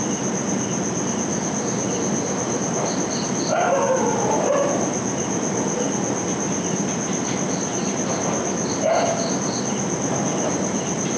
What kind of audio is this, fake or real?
real